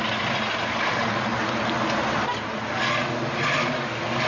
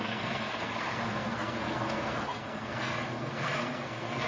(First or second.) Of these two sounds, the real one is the first